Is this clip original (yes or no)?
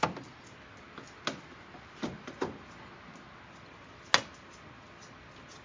yes